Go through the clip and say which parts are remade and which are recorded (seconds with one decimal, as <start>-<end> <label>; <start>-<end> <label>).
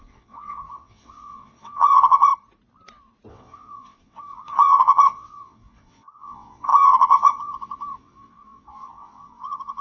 0.0-2.3 remade; 2.3-3.3 recorded; 3.3-9.8 remade